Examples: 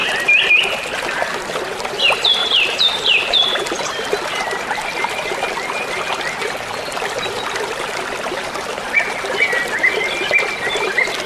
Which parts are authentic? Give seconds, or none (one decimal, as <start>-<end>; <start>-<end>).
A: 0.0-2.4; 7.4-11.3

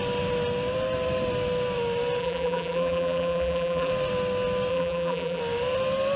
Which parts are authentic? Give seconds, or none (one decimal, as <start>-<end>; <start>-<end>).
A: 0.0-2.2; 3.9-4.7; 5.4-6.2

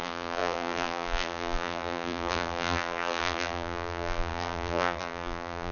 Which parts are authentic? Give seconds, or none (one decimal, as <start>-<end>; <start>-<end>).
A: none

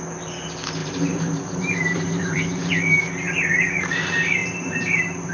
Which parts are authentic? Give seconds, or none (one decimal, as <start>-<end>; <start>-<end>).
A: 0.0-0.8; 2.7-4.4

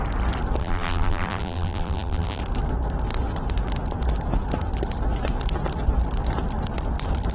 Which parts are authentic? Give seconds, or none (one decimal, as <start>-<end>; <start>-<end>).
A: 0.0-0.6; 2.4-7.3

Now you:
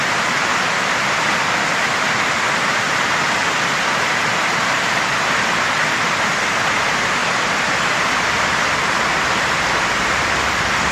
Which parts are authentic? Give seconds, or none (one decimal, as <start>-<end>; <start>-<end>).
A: 0.0-7.2; 9.4-10.9

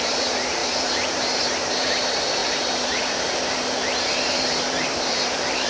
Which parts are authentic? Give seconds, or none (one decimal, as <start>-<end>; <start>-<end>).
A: none

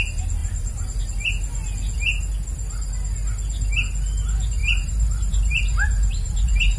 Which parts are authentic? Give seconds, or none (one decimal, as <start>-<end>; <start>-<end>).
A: 0.0-0.4; 1.0-4.6